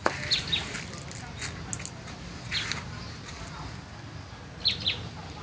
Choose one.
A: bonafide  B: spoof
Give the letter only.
A